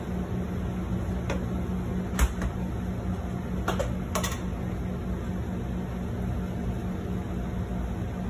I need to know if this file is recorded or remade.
recorded